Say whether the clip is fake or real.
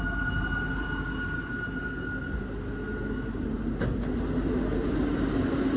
real